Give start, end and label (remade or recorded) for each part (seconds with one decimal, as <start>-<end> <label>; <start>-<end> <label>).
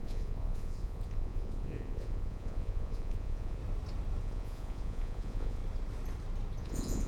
0.0-3.6 remade; 3.6-4.2 recorded; 4.2-5.6 remade; 5.6-6.6 recorded; 6.6-7.1 remade